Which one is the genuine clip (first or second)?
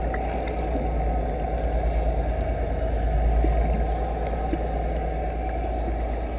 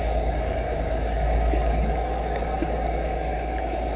first